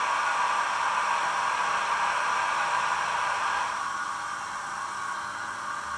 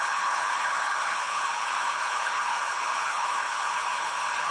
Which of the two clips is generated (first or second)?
second